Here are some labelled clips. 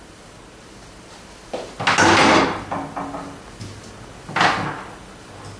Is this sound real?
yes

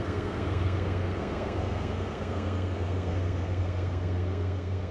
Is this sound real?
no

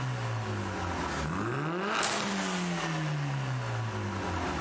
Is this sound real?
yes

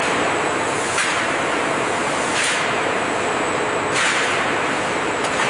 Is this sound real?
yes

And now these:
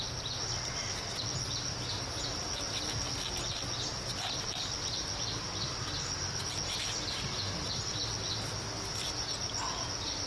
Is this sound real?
yes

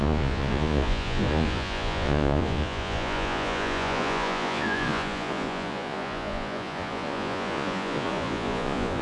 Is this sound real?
no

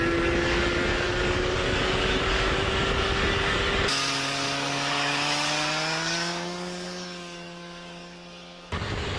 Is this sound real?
no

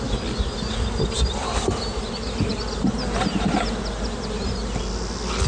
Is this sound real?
yes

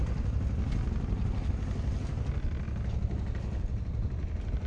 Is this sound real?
yes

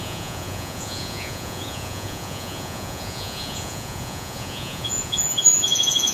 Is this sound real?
no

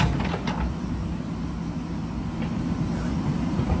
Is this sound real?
yes